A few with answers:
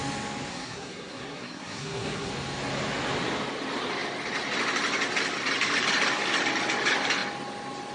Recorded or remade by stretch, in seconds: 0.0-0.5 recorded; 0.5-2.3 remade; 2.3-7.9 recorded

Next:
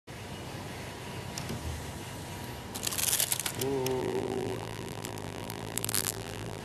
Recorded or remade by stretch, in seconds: 0.0-4.0 recorded; 4.0-6.6 remade